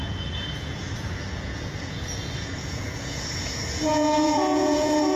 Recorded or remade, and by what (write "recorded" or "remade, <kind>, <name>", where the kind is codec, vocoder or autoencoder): remade, vocoder, Vocos